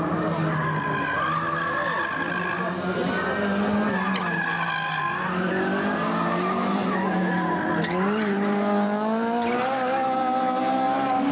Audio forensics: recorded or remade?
recorded